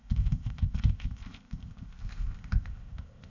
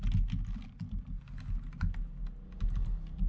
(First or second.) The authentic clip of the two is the second